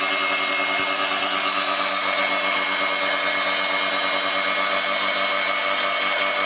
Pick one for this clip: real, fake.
real